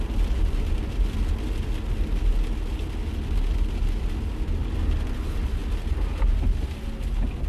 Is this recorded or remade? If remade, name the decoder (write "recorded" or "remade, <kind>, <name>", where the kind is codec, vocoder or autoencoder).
recorded